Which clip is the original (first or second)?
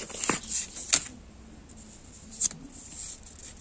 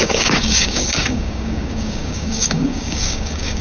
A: first